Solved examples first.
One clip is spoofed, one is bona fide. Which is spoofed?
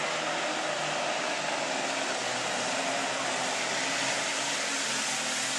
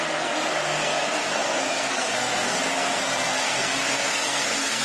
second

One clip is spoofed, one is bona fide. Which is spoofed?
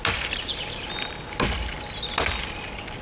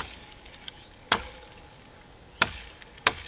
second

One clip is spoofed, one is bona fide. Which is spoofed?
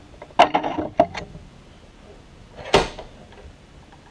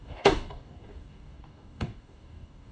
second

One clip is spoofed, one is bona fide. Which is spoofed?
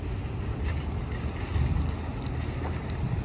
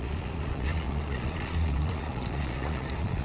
second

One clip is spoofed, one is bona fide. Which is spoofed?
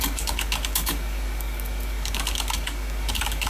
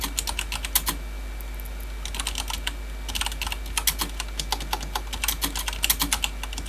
first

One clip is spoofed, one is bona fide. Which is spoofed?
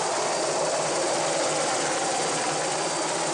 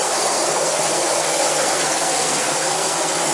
second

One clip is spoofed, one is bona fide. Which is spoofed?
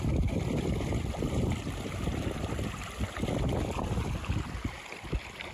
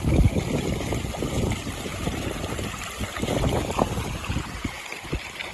first